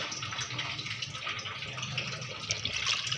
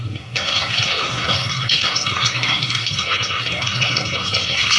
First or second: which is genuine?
first